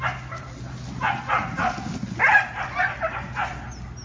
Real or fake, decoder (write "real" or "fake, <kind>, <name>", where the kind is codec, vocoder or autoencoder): real